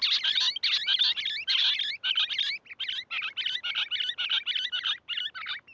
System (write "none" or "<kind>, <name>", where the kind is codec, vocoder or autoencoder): none